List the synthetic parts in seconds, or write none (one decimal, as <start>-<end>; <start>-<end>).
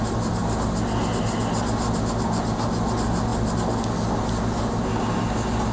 none